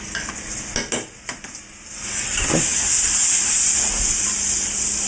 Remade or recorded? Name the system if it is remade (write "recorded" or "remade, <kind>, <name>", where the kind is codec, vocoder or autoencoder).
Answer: recorded